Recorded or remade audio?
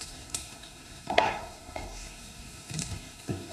remade